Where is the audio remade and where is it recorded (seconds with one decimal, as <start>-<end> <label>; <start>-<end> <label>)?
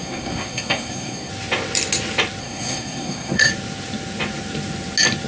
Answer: 0.0-1.3 remade; 1.3-2.4 recorded; 2.4-3.5 remade; 3.5-5.3 recorded